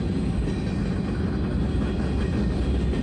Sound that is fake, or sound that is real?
real